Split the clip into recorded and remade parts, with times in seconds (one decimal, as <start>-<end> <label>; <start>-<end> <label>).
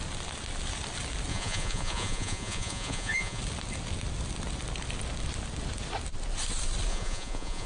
0.0-1.3 recorded; 1.3-3.4 remade; 3.4-6.9 recorded; 6.9-7.7 remade